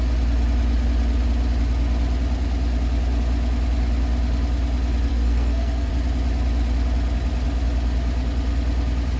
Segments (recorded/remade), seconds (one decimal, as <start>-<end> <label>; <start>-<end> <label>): 0.0-5.1 recorded; 5.1-5.9 remade; 5.9-9.2 recorded